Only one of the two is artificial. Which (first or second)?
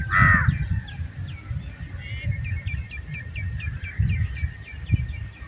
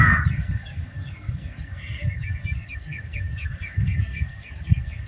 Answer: second